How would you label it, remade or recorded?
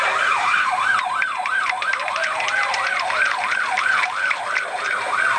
remade